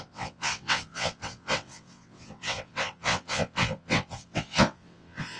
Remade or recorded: remade